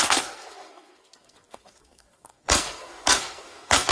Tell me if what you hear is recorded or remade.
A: remade